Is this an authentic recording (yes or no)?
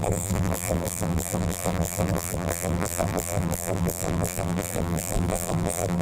no